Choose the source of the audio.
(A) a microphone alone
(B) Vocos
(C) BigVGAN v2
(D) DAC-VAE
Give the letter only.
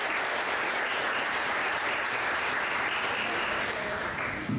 C